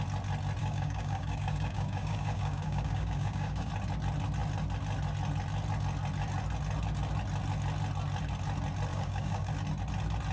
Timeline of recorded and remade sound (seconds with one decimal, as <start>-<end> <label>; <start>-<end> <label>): 0.0-0.6 recorded; 0.6-3.7 remade; 3.7-8.9 recorded; 8.9-9.5 remade; 9.5-10.3 recorded